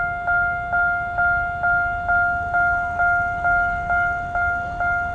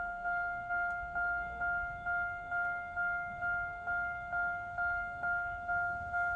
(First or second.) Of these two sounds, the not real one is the second